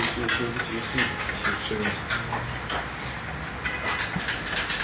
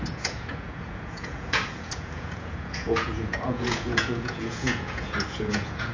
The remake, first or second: second